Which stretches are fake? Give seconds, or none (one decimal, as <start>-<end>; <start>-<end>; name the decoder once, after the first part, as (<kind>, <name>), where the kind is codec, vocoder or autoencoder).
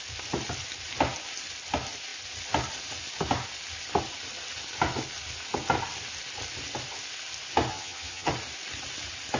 7.7-8.3 (vocoder, HiFi-GAN)